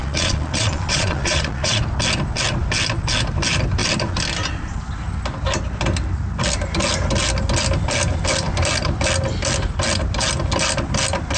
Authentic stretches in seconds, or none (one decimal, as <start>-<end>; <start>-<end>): 1.8-11.4

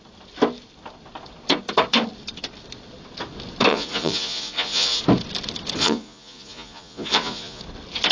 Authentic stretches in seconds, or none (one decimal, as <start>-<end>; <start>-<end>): 0.0-3.7; 5.0-5.8; 7.6-8.1

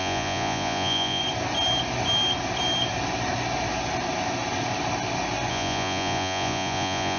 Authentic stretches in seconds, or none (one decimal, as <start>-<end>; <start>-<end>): 1.2-5.5

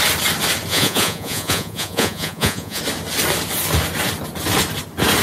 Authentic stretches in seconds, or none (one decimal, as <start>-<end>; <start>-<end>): 0.0-0.7; 2.8-5.2

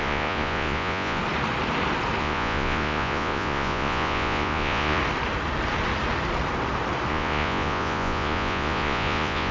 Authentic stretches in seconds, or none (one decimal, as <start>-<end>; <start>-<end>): 1.2-2.2; 5.0-7.1

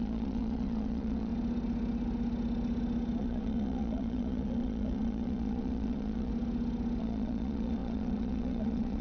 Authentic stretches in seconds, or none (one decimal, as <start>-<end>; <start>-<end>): 1.3-3.2; 6.3-7.0

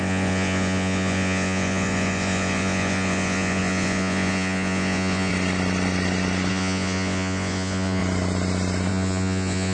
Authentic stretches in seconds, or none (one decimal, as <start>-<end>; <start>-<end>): 5.3-6.5; 8.0-8.9